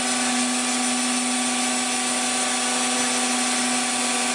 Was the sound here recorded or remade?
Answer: recorded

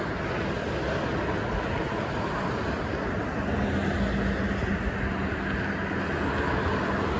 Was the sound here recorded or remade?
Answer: recorded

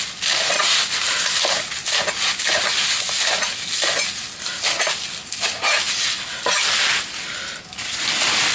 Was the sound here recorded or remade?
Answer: recorded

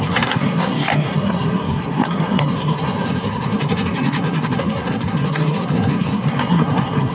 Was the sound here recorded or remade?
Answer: remade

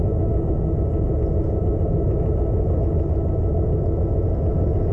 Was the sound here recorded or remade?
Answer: recorded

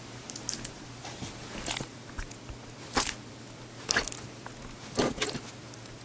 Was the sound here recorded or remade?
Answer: recorded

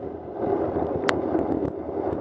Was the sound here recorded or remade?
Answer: recorded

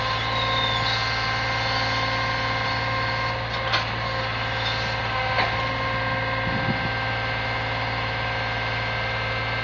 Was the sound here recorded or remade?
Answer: recorded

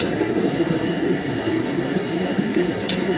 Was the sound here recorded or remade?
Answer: remade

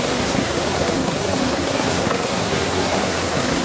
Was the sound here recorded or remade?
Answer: remade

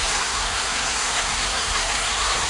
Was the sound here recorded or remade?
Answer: remade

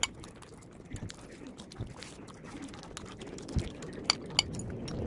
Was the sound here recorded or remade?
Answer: recorded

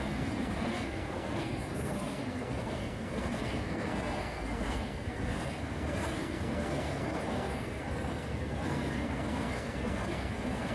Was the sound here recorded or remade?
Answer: remade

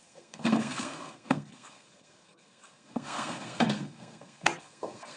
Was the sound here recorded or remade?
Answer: remade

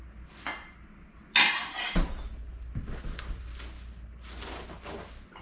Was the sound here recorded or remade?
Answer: recorded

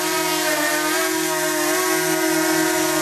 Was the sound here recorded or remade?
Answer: recorded